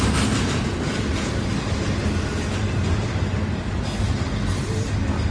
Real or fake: real